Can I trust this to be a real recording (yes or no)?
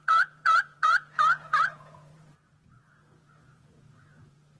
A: no